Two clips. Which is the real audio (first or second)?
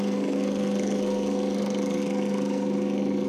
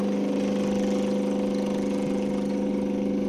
second